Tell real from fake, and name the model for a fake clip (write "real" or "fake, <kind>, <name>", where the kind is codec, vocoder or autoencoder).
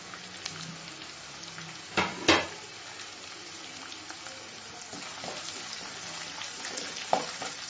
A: real